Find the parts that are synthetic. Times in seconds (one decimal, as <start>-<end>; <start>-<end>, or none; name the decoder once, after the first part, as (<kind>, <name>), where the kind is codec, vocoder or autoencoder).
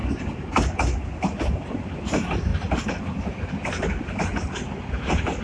2.0-2.5 (vocoder, BigVGAN v2); 4.9-5.4